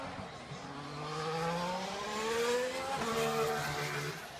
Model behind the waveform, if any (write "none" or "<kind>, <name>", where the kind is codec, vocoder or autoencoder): none